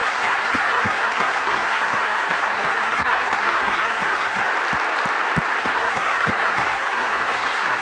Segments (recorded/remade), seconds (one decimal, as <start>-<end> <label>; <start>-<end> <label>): 0.0-4.5 remade; 4.5-5.6 recorded; 5.6-7.8 remade